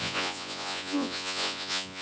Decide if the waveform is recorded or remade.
remade